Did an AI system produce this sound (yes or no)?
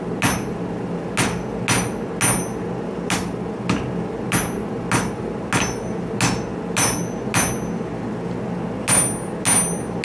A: no